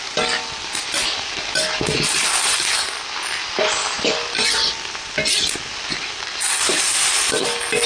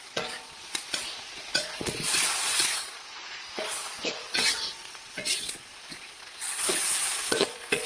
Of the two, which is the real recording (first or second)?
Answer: first